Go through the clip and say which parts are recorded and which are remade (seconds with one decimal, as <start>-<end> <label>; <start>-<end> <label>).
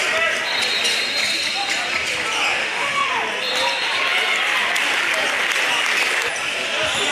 0.0-2.6 recorded; 2.6-3.1 remade; 3.1-7.1 recorded